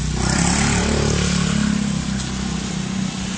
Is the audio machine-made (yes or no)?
no